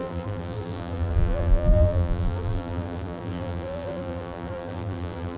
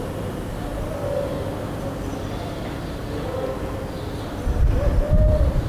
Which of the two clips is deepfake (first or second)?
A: first